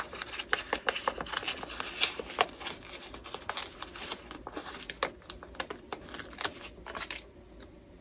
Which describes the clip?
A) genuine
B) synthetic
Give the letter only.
A